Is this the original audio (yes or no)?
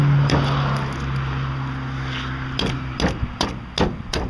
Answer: yes